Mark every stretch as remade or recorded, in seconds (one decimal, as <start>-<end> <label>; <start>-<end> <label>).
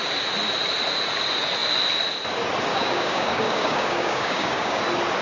0.0-2.7 recorded; 2.7-4.8 remade; 4.8-5.2 recorded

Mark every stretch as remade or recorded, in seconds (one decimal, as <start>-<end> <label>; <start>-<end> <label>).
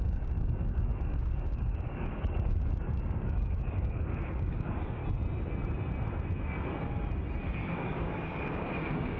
0.0-5.0 remade; 5.0-7.5 recorded; 7.5-9.2 remade